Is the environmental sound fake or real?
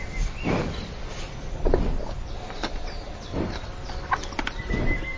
real